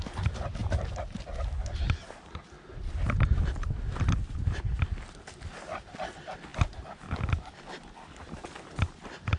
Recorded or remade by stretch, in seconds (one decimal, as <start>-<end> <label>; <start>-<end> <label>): 0.0-9.4 recorded